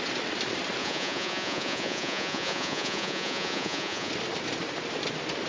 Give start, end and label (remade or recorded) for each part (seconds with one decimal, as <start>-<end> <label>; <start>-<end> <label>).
0.0-0.8 recorded; 0.8-4.1 remade; 4.1-5.5 recorded